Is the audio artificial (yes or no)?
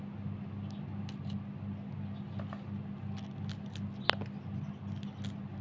no